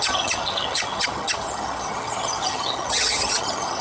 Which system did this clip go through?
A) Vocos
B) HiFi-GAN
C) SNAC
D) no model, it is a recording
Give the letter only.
B